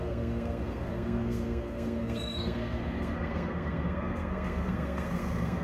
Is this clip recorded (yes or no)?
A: no